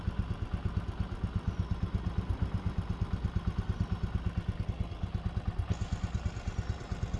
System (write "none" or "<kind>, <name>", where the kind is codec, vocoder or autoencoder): none